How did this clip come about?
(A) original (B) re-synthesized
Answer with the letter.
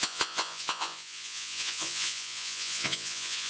B